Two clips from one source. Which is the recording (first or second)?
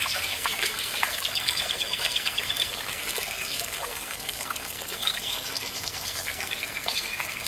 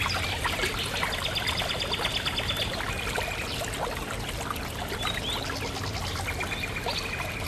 second